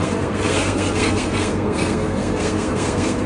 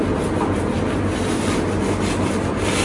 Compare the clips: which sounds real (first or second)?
second